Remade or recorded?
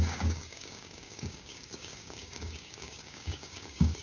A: remade